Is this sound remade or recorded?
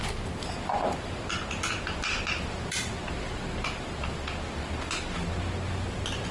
recorded